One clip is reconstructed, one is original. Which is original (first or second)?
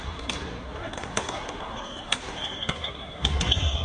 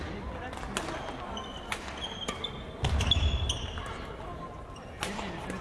second